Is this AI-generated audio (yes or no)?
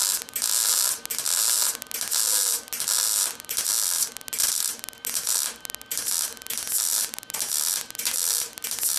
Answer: no